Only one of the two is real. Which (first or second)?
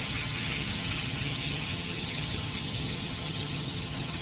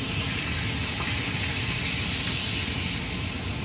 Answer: second